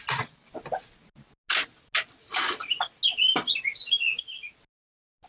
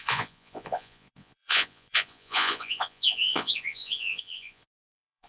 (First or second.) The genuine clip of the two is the first